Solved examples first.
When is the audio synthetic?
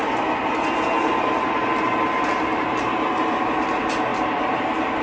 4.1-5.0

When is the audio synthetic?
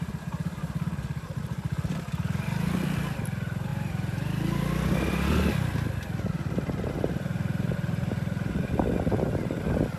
none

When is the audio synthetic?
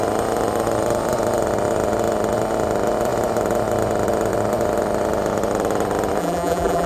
6.2-6.9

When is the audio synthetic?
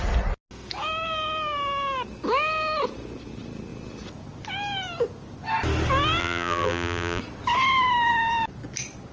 6.2-7.2